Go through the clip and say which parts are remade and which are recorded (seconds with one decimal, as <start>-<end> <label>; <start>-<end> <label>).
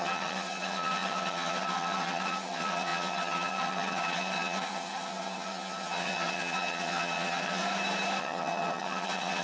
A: 0.0-7.6 remade; 7.6-8.2 recorded; 8.2-9.4 remade